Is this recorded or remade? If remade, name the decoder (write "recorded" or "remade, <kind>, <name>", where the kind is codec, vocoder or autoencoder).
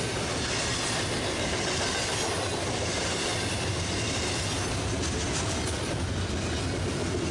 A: recorded